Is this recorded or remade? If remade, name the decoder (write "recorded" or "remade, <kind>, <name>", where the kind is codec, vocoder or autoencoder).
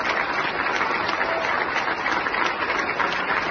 recorded